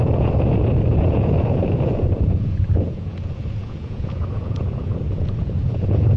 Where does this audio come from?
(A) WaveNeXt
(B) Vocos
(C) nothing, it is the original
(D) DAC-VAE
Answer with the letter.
B